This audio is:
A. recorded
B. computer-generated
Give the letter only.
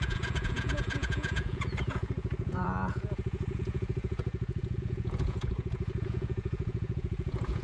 B